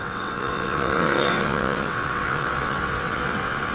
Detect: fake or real fake